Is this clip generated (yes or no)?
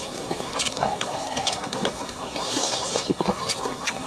yes